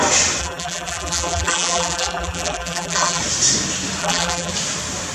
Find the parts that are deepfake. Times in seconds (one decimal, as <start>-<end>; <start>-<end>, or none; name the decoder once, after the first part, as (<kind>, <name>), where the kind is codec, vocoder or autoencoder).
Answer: 0.4-3.2 (vocoder, BigVGAN v2); 4.0-4.5